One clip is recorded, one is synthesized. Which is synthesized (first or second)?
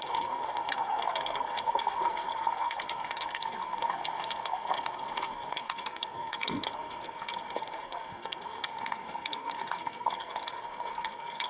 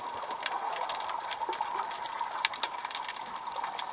first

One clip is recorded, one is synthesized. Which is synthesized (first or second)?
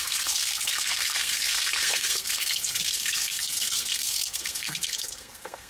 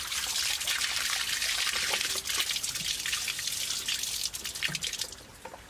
first